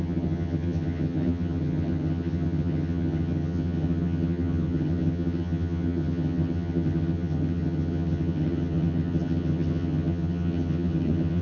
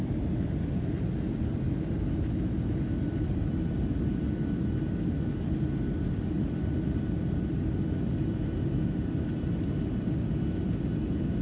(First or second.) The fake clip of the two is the first